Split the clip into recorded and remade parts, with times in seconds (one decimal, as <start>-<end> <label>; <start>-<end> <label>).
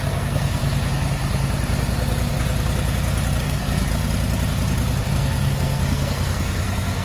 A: 0.0-0.6 remade; 0.6-3.4 recorded; 3.4-3.9 remade; 3.9-5.1 recorded; 5.1-7.0 remade